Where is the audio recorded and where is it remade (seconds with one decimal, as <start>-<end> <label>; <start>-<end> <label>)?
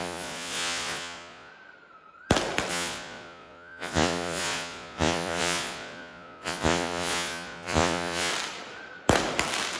0.0-1.5 remade; 1.5-2.7 recorded; 2.7-8.3 remade; 8.3-9.8 recorded